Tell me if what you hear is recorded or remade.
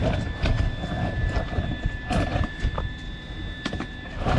recorded